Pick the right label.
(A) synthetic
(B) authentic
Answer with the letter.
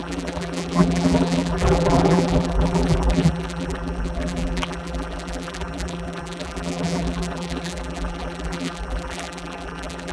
A